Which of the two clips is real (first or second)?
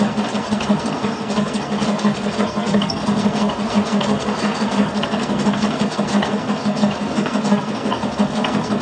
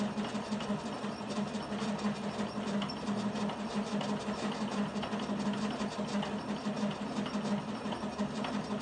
second